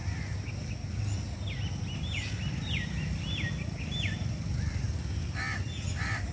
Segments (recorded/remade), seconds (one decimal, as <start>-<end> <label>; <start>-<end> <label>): 0.0-6.3 recorded